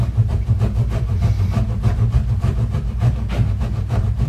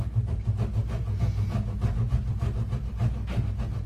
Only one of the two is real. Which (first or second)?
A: second